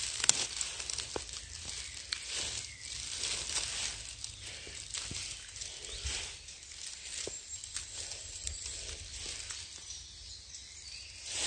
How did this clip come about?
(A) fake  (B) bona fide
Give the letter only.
B